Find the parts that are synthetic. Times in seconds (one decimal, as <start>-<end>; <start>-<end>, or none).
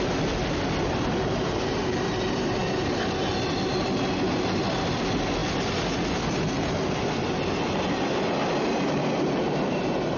none